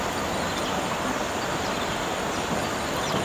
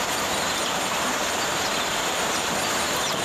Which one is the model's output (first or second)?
second